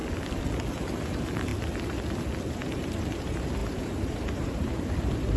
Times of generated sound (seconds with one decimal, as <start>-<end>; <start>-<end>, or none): 0.7-1.5; 2.5-5.4